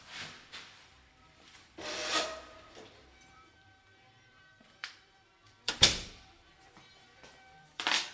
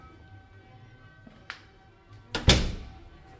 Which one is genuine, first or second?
second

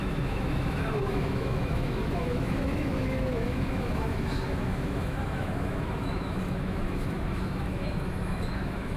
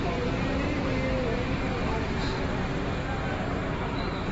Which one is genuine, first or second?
second